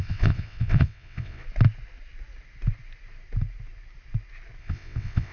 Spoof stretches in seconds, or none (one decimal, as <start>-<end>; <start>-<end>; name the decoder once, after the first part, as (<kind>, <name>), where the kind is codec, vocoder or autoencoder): 0.0-1.4 (vocoder, WaveNeXt); 4.6-5.3